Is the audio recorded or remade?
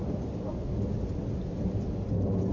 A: recorded